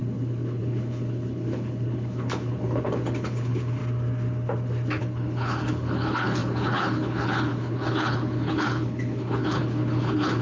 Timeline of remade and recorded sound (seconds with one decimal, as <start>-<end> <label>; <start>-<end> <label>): 0.0-3.8 remade; 3.8-5.0 recorded; 5.0-10.4 remade